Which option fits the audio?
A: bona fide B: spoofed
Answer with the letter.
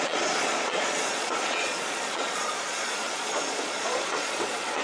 B